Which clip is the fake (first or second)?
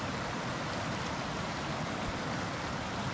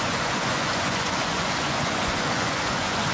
second